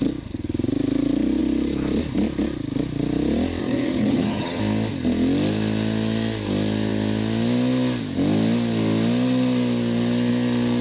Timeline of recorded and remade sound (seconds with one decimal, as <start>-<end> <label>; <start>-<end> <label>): 0.0-3.6 recorded; 3.6-4.6 remade; 4.6-10.8 recorded